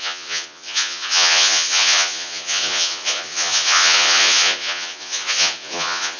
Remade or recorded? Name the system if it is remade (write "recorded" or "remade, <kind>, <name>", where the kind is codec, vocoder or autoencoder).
remade, vocoder, Vocos